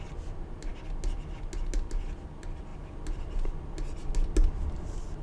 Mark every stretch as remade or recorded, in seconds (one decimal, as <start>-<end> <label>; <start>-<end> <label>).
0.0-5.2 recorded